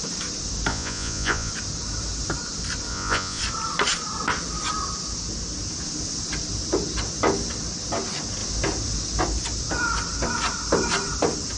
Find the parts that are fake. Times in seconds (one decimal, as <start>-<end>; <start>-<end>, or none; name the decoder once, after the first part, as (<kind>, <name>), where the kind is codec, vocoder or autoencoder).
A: 0.7-1.5 (vocoder, Vocos); 2.9-3.4